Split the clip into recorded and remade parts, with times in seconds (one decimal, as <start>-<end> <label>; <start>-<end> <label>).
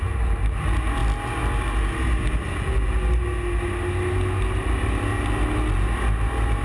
0.0-6.6 recorded